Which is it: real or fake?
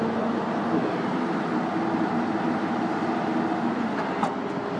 real